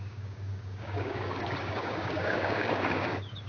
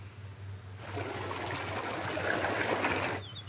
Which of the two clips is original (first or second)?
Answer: second